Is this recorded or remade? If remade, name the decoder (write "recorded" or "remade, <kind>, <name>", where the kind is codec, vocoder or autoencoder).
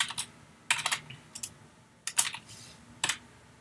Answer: recorded